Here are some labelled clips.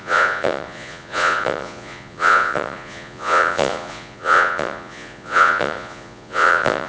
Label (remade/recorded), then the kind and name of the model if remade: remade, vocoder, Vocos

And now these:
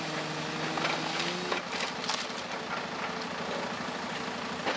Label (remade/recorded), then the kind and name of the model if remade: recorded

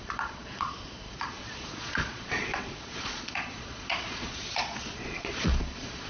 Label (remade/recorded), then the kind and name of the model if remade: remade, vocoder, Vocos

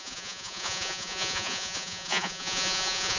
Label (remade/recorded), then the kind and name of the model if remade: remade, vocoder, Vocos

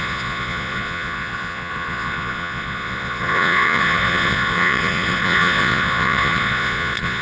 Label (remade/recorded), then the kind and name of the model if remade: remade, vocoder, Vocos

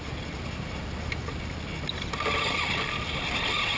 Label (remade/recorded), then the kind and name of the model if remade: recorded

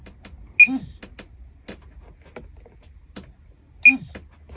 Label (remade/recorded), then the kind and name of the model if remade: recorded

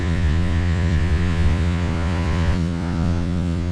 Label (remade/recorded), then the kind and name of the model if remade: remade, vocoder, Vocos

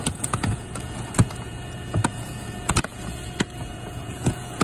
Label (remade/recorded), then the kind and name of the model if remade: remade, vocoder, Vocos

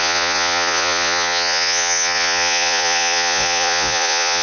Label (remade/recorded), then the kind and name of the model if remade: remade, vocoder, Vocos